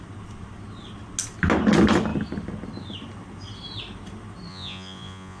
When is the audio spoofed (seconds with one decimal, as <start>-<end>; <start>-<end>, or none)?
4.5-5.4

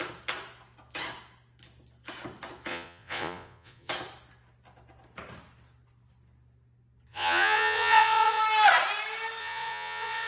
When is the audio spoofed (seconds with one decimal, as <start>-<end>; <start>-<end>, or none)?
2.7-3.9; 7.1-8.4; 9.4-10.3

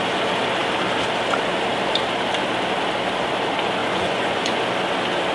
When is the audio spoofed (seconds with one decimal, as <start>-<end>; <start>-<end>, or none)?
3.8-4.6

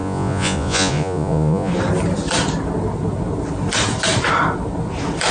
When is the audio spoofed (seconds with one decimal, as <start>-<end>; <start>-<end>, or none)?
0.0-1.7